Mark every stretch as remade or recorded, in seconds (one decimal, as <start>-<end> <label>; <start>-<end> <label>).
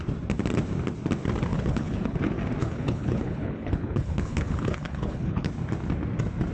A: 0.0-1.5 recorded; 1.5-2.2 remade; 2.2-2.6 recorded; 2.6-5.5 remade; 5.5-6.5 recorded